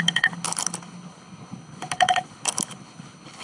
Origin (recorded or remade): remade